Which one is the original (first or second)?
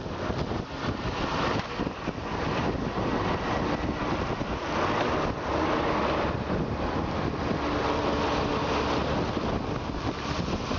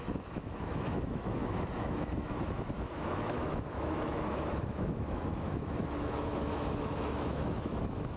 first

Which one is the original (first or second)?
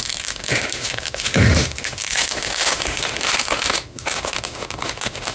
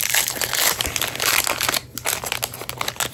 second